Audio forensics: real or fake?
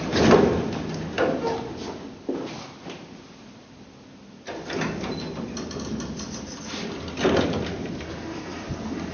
real